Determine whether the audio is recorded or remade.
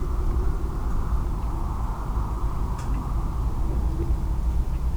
recorded